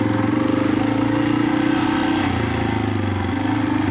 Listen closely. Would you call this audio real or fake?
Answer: real